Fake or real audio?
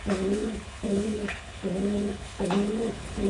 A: fake